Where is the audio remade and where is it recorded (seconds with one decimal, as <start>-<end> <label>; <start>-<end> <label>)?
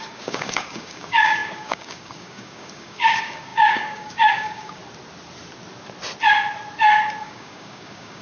0.0-4.8 remade; 4.8-7.2 recorded; 7.2-8.2 remade